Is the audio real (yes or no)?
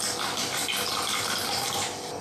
yes